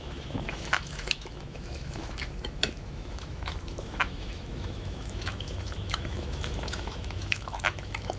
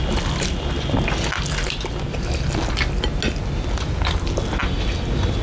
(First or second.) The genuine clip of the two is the second